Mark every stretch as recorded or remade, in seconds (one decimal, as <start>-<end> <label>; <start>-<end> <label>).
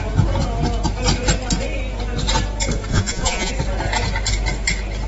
0.0-2.9 recorded; 2.9-3.5 remade; 3.5-5.1 recorded